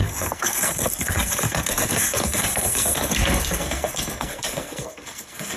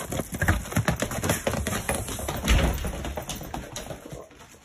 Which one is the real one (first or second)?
second